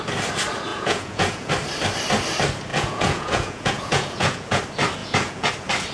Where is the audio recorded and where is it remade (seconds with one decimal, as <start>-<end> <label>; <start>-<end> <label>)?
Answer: 0.0-0.7 recorded; 0.7-1.5 remade; 1.5-2.7 recorded; 2.7-4.6 remade; 4.6-5.0 recorded; 5.0-5.5 remade; 5.5-5.9 recorded